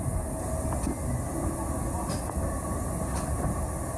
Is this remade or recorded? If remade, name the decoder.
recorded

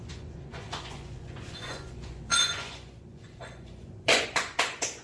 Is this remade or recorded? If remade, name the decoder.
remade, vocoder, Vocos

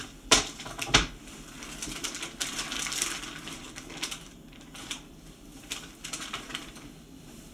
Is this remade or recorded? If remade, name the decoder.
remade, vocoder, BigVGAN v2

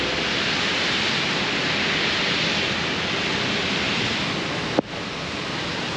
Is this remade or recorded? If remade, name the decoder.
recorded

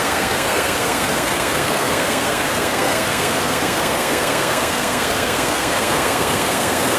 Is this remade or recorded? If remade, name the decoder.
remade, codec, SNAC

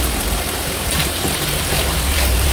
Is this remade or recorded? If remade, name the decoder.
remade, vocoder, BigVGAN v2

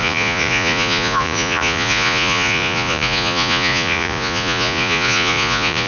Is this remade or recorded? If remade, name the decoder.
remade, vocoder, Vocos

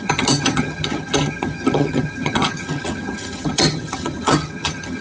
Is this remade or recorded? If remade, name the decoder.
remade, vocoder, HiFi-GAN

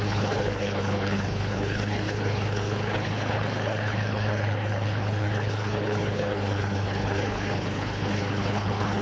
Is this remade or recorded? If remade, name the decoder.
remade, codec, HILCodec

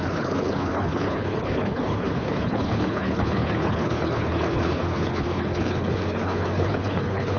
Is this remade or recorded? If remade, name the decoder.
remade, codec, HILCodec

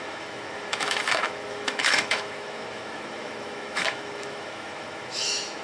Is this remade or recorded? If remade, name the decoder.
remade, autoencoder, DAC-VAE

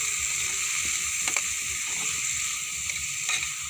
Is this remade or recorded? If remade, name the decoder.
recorded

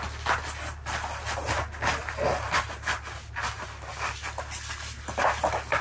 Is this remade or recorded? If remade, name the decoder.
recorded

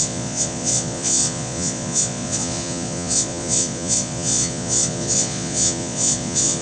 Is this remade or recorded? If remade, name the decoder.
remade, vocoder, Vocos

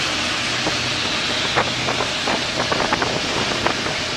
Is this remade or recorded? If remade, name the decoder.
recorded